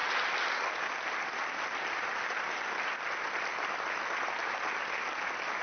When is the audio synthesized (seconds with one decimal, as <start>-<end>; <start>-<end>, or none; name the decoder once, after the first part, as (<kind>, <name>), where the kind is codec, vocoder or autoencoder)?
none